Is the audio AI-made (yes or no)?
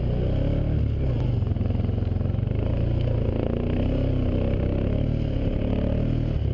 no